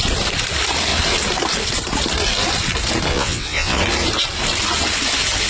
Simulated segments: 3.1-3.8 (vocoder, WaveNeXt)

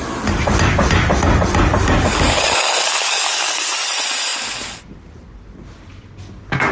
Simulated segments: 1.7-3.9 (codec, DAC)

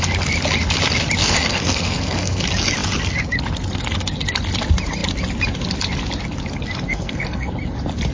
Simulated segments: 1.2-2.4 (codec, SNAC); 6.9-7.5

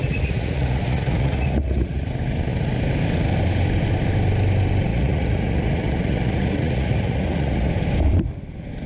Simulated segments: 0.0-2.0 (vocoder, Vocos); 4.9-7.7

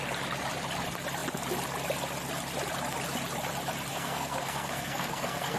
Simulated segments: 3.9-5.6 (codec, SNAC)

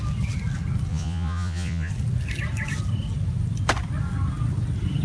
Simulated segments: 0.9-1.9 (vocoder, Vocos)

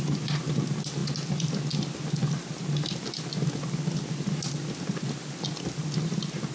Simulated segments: none

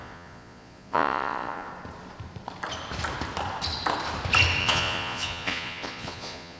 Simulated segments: 0.0-1.7 (vocoder, Vocos); 4.6-6.6